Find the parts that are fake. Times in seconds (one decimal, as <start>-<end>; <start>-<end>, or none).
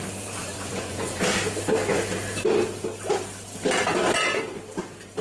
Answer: 0.4-1.2